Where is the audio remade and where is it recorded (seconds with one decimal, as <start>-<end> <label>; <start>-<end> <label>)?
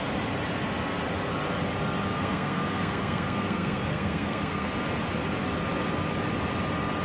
0.0-2.1 recorded; 2.1-4.7 remade; 4.7-7.0 recorded